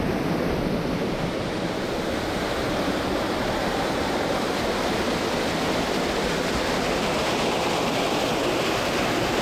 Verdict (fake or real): real